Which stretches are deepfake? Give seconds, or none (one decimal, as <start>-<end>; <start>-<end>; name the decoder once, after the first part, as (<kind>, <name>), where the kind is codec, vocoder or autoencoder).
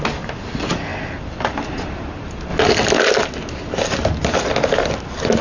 0.9-1.9 (vocoder, BigVGAN v2); 2.5-3.0